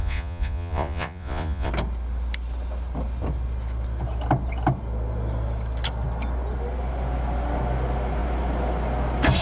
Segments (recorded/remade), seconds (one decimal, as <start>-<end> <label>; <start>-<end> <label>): 0.0-1.7 remade; 1.7-9.4 recorded

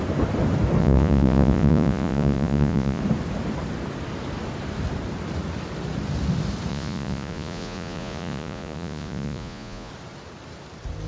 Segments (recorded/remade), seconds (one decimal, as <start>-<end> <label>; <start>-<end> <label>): 0.0-0.8 recorded; 0.8-3.0 remade; 3.0-6.7 recorded; 6.7-9.9 remade; 9.9-11.1 recorded

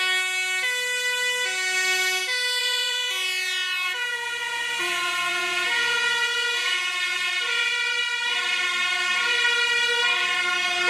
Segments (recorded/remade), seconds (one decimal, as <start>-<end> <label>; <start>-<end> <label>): 0.0-2.6 recorded; 2.6-7.3 remade; 7.3-10.9 recorded

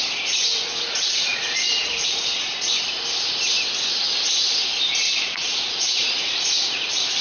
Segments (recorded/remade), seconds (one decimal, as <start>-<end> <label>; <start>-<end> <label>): 0.0-2.5 remade; 2.5-5.2 recorded; 5.2-7.2 remade

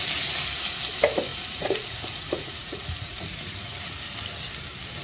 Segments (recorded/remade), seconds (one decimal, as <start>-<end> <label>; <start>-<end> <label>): 0.0-1.3 recorded; 1.3-4.1 remade; 4.1-5.0 recorded

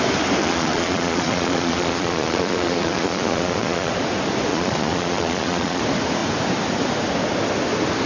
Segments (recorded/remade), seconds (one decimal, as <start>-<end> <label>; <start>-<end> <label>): 0.0-0.4 recorded; 0.4-3.9 remade; 3.9-4.5 recorded; 4.5-5.8 remade; 5.8-8.1 recorded

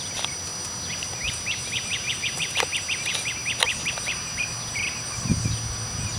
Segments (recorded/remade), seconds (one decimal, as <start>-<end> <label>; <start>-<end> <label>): 0.0-6.2 recorded

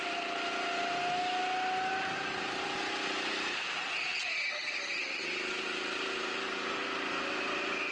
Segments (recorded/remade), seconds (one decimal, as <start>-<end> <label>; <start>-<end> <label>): 0.0-7.9 recorded